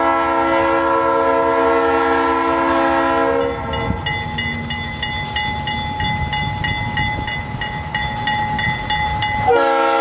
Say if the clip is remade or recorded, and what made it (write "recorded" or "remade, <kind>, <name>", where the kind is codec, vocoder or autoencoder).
recorded